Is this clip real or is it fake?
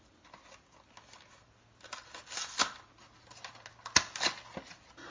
real